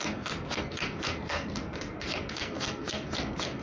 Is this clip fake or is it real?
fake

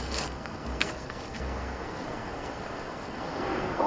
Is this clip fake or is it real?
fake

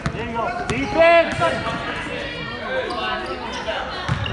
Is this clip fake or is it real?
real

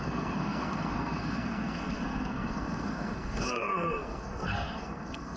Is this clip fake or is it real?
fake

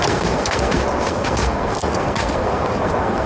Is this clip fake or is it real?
fake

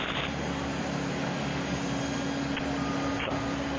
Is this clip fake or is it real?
real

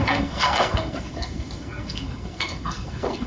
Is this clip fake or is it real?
fake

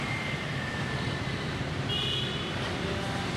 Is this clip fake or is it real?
real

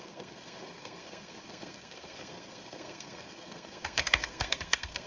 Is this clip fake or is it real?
fake